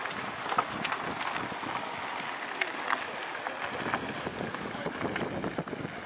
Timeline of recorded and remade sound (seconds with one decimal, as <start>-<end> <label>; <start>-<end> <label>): 0.0-4.3 recorded; 4.3-5.0 remade; 5.0-6.1 recorded